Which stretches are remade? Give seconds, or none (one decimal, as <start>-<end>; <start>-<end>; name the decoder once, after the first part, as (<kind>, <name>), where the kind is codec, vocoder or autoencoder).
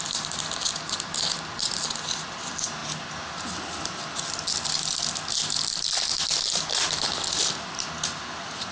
none